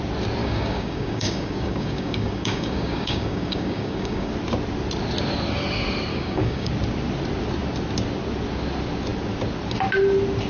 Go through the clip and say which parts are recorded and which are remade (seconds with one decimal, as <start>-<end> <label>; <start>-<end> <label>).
0.0-0.4 recorded; 0.4-4.3 remade; 4.3-6.1 recorded; 6.1-6.7 remade; 6.7-10.5 recorded